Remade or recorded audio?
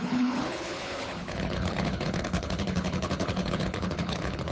remade